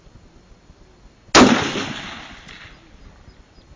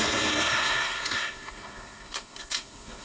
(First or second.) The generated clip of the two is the second